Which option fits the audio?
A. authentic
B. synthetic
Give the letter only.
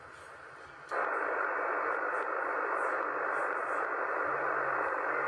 A